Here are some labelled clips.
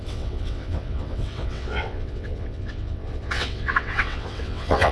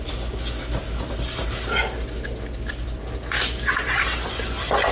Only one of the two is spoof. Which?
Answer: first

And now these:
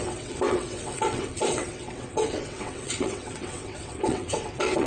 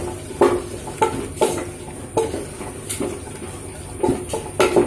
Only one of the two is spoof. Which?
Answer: first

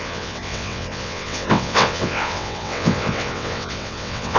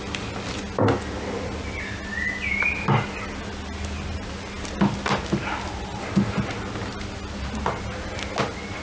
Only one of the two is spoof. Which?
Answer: first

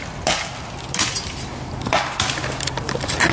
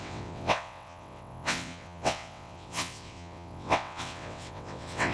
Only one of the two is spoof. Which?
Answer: second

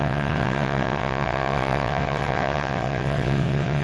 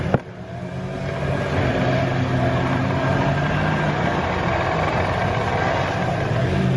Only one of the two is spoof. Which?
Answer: first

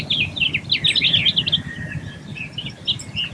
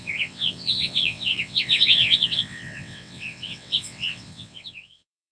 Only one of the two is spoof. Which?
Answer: second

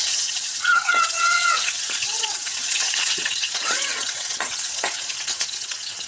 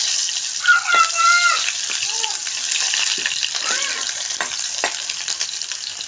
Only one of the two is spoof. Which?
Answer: first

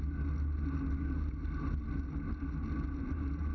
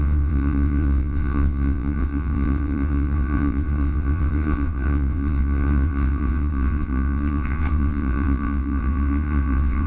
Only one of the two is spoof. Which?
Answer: second